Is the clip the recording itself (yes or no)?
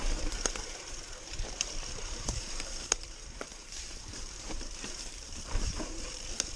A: no